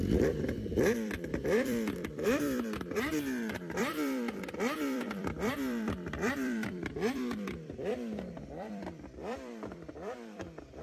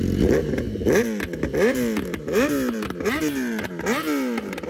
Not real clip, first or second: first